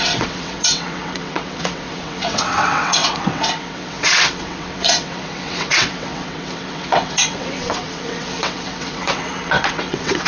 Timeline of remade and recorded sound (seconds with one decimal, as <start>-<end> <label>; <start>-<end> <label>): 0.0-10.3 remade